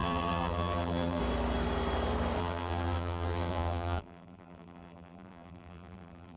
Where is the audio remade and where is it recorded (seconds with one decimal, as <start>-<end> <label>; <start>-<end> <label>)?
0.0-1.2 remade; 1.2-2.4 recorded; 2.4-6.4 remade